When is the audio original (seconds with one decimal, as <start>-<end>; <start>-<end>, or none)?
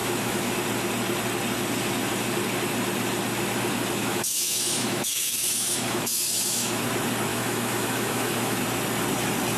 0.5-4.0; 6.8-7.3; 8.6-9.6